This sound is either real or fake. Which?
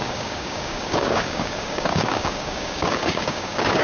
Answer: fake